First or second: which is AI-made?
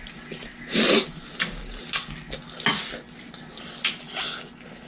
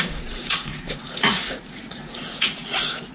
second